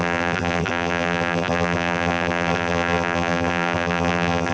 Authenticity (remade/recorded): remade